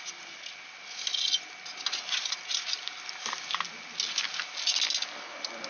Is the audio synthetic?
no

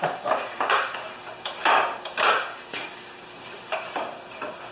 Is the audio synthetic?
yes